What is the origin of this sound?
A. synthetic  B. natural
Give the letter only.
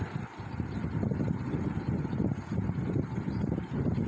B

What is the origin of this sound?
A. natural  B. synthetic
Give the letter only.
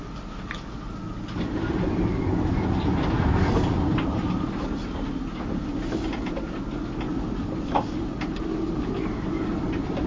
A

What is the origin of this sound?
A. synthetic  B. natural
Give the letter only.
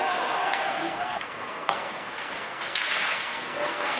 A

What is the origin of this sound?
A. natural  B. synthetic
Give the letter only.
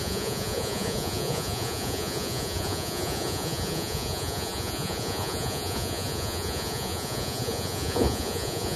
B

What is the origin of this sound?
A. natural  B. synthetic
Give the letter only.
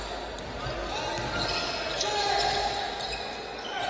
A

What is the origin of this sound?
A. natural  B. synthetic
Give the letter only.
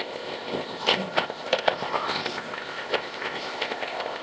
B